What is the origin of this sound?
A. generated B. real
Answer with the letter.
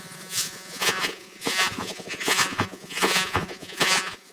A